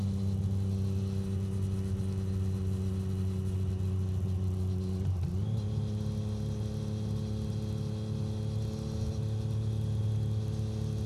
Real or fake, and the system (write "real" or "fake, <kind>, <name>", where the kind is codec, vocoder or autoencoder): real